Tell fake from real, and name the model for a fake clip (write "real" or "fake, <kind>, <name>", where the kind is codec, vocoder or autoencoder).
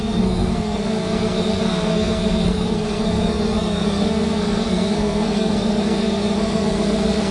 fake, codec, SNAC